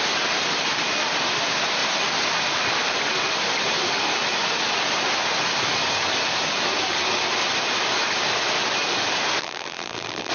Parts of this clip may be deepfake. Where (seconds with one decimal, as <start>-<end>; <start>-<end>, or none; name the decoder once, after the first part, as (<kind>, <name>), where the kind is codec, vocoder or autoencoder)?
9.4-10.3 (vocoder, BigVGAN v2)